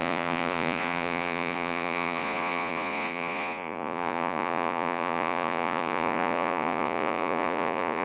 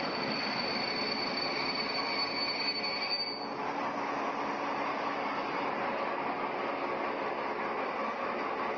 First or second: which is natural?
second